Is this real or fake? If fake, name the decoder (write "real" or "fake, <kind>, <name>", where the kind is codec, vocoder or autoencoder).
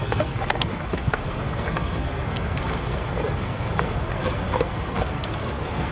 fake, codec, SNAC